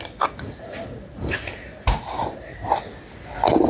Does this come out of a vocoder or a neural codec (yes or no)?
no